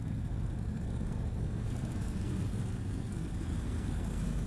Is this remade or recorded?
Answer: remade